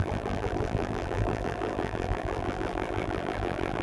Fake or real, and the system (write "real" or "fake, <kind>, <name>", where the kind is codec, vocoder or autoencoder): fake, vocoder, BigVGAN v2